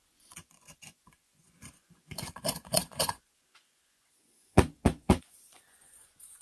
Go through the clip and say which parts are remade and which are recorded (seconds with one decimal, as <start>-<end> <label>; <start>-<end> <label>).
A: 0.0-6.4 remade